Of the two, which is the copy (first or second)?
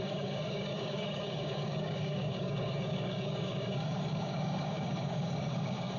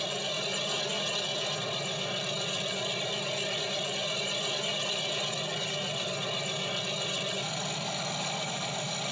first